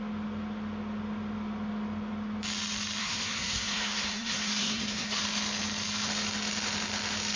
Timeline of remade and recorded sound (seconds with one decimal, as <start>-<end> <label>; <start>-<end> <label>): 0.0-3.0 recorded; 3.0-5.2 remade; 5.2-7.4 recorded